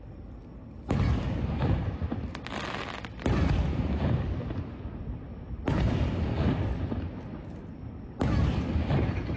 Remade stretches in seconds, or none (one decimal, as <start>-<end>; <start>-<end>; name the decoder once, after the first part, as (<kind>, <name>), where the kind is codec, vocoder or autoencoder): none